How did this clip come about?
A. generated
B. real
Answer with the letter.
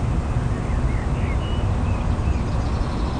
B